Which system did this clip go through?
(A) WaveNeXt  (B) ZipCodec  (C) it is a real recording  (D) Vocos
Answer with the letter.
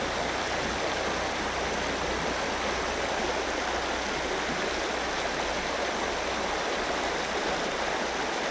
C